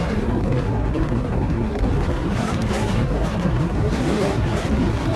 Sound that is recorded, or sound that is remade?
remade